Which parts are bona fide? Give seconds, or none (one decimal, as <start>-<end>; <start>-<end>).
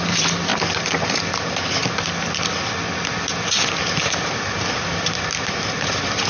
0.5-1.4; 1.8-4.0